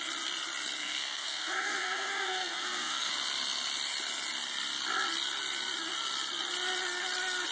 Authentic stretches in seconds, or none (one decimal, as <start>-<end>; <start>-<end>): 0.0-0.8; 3.1-7.5